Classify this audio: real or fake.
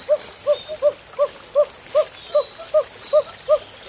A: real